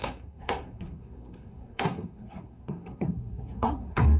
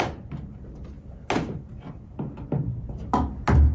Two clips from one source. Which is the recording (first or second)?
second